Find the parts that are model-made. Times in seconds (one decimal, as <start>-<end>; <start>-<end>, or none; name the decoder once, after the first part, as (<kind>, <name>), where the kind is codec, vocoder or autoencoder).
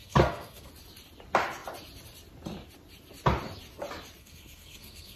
0.0-0.7 (codec, SNAC); 4.2-5.2